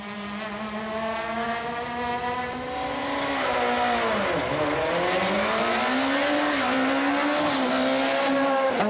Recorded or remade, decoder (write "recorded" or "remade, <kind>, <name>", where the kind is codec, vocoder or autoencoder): recorded